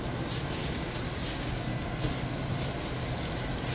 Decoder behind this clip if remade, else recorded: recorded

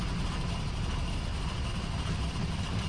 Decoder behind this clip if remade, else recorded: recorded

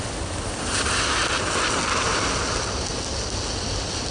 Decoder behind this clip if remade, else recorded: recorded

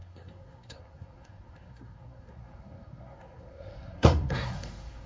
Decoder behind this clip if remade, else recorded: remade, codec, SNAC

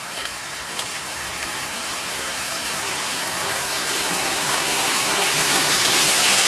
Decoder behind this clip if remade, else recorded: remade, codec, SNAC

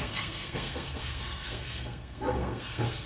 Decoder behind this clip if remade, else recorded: remade, codec, SNAC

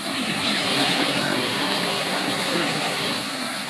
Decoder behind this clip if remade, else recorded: remade, codec, SNAC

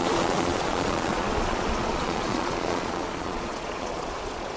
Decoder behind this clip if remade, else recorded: remade, vocoder, Vocos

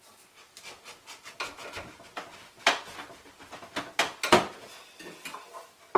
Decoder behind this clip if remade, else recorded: recorded